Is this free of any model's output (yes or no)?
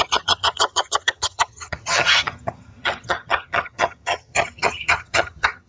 no